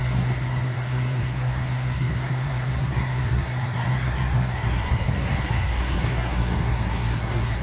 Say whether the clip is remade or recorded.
remade